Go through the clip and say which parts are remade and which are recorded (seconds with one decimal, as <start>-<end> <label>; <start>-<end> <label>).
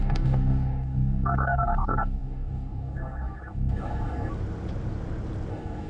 0.0-4.3 remade; 4.3-5.5 recorded; 5.5-5.9 remade